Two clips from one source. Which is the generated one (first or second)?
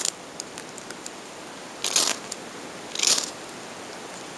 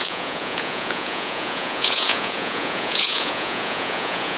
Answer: second